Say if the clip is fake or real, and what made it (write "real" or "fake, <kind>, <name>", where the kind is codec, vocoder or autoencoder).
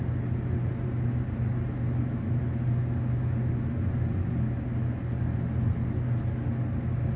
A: real